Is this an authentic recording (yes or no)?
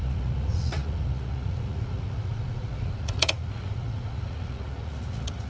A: no